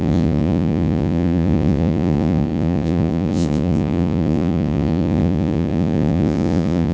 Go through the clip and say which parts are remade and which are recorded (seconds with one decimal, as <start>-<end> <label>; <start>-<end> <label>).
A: 0.0-6.9 remade